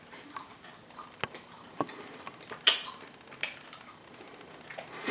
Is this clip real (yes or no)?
yes